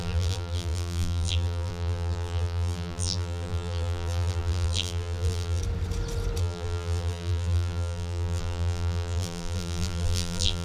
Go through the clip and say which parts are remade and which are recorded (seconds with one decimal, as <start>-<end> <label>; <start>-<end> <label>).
0.0-5.6 remade; 5.6-6.4 recorded; 6.4-10.6 remade